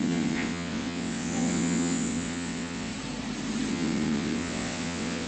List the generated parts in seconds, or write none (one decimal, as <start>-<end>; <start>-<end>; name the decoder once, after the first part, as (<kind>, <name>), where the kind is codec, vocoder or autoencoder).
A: 0.0-2.9 (vocoder, WaveNeXt); 3.7-5.3